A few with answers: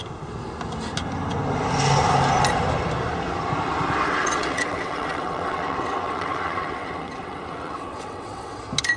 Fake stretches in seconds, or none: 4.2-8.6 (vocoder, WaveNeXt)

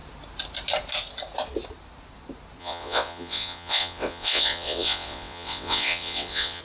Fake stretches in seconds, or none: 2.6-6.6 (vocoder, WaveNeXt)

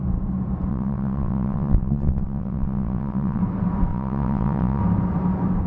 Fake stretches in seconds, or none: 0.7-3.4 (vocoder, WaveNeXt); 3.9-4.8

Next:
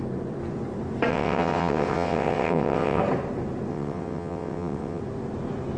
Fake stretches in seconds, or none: 1.1-3.0 (vocoder, WaveNeXt); 3.7-5.0

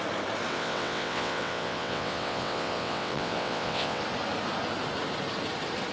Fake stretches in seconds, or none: 0.5-4.0 (vocoder, WaveNeXt)

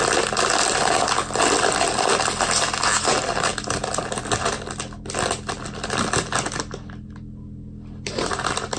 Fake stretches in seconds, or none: none